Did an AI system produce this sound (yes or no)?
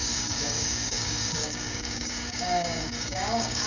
yes